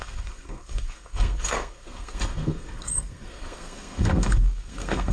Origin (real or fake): fake